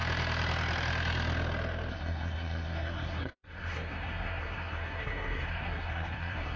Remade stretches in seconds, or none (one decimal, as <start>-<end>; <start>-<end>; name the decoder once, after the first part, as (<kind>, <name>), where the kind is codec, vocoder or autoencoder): 1.9-6.6 (codec, SNAC)